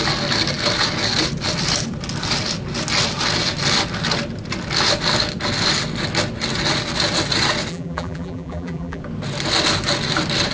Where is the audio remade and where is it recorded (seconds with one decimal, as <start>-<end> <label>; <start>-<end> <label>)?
0.0-7.7 recorded; 7.7-9.0 remade; 9.0-10.5 recorded